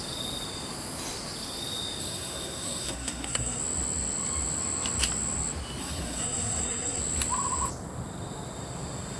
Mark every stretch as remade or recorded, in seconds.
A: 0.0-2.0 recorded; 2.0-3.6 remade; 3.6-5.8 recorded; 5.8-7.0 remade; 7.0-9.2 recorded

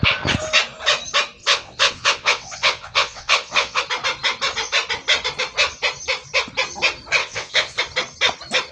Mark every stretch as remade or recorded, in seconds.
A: 0.0-1.4 recorded; 1.4-3.8 remade; 3.8-7.2 recorded; 7.2-7.8 remade; 7.8-8.7 recorded

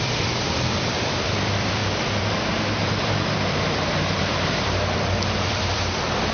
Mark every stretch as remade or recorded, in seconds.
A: 0.0-6.3 remade

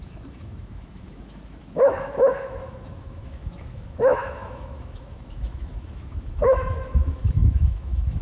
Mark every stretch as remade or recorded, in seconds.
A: 0.0-8.2 remade

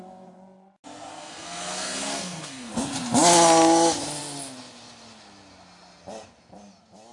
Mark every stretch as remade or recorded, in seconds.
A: 0.0-1.1 recorded; 1.1-2.7 remade; 2.7-7.1 recorded

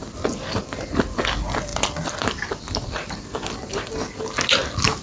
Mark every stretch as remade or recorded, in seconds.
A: 0.0-5.0 recorded

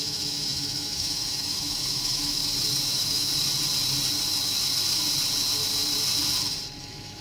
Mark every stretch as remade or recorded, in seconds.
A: 0.0-2.4 remade; 2.4-2.9 recorded; 2.9-3.3 remade; 3.3-6.8 recorded; 6.8-7.2 remade

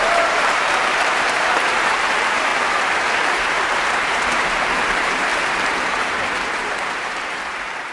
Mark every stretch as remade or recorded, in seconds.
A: 0.0-2.5 remade; 2.5-3.0 recorded; 3.0-7.9 remade